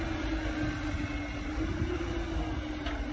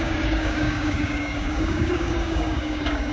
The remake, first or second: second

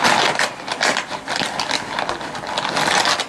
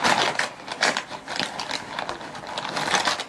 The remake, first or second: second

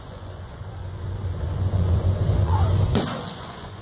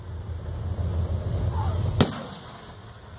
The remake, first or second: first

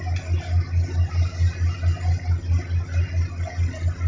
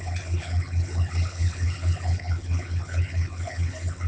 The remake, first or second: second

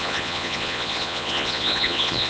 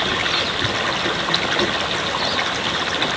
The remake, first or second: first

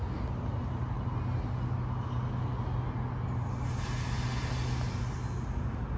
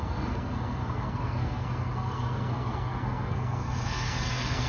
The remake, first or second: second